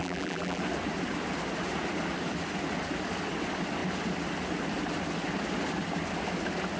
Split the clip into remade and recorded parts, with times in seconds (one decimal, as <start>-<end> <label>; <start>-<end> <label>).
0.0-0.6 remade; 0.6-6.8 recorded